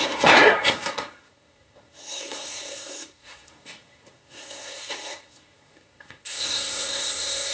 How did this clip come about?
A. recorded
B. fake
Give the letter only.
B